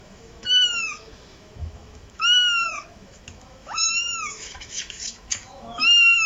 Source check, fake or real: fake